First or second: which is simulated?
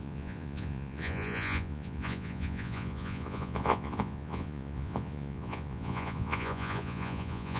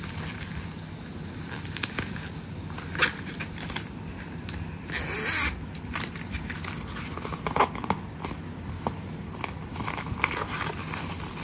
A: first